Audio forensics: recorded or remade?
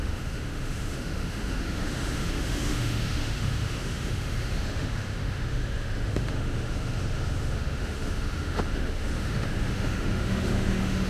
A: remade